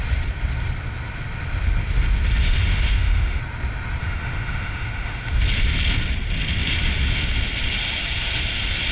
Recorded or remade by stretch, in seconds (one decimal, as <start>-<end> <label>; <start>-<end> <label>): 0.0-2.4 recorded; 2.4-3.4 remade; 3.4-4.0 recorded; 4.0-5.4 remade; 5.4-8.9 recorded